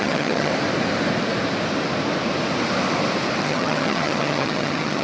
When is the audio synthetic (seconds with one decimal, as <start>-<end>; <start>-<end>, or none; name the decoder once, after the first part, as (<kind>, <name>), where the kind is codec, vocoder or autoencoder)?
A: 0.0-0.5 (vocoder, HiFi-GAN); 3.4-5.0